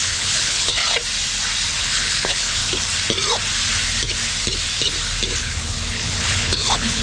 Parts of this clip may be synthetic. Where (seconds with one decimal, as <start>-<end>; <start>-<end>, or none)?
0.0-0.8; 1.8-2.6; 5.4-7.0